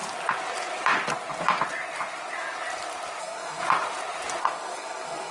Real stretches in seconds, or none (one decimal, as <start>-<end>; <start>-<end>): 0.0-3.2; 3.6-4.4